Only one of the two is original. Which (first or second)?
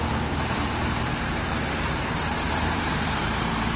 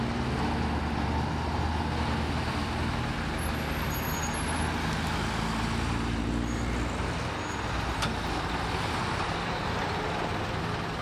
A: second